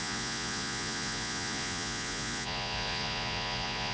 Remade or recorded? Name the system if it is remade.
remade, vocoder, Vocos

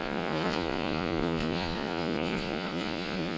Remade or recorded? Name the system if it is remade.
remade, vocoder, Vocos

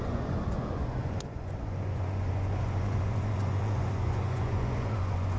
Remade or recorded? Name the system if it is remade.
remade, vocoder, Vocos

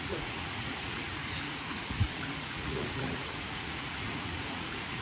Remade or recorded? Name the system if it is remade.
remade, vocoder, Vocos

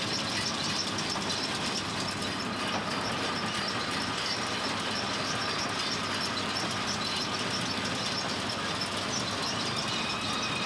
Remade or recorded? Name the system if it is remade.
recorded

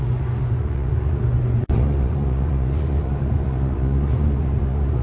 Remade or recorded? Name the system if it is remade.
remade, vocoder, Vocos